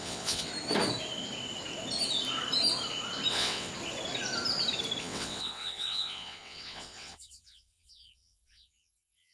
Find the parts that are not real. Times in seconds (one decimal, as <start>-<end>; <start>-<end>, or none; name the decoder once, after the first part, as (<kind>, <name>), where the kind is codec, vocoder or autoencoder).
0.0-0.5 (vocoder, WaveNeXt); 3.3-3.7; 5.0-9.3